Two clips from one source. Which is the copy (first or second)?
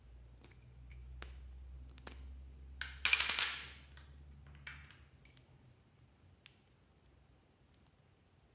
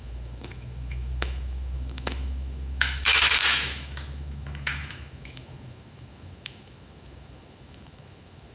second